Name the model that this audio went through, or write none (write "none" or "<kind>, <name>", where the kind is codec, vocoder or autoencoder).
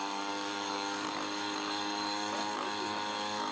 codec, DAC